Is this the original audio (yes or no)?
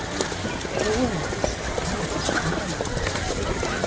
yes